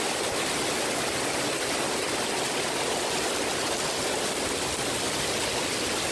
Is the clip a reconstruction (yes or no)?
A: no